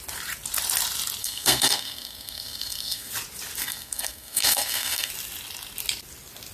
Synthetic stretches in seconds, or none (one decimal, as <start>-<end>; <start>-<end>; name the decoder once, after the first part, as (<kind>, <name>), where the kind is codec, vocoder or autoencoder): 1.2-3.1 (codec, SNAC); 3.6-5.1